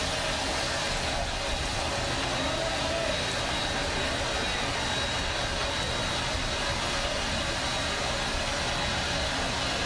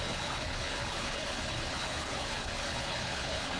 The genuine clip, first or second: first